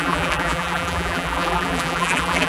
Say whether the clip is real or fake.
fake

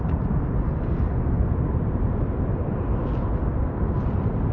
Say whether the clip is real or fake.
real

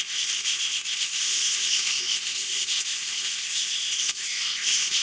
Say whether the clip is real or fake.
fake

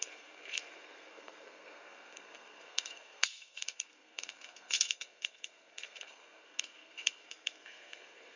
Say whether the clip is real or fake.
fake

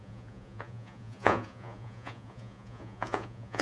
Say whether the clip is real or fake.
fake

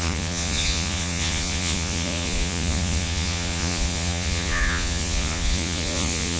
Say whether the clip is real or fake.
fake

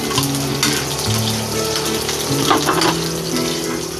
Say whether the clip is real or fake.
real